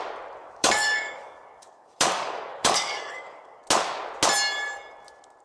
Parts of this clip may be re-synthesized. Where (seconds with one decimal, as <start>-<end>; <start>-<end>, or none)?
0.4-3.6